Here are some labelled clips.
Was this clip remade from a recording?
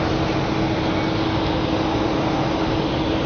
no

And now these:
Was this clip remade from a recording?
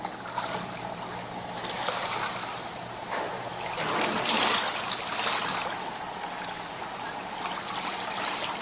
no